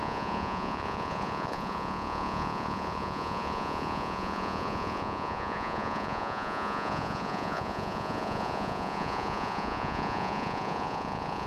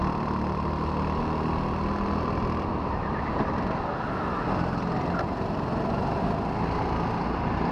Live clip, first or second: second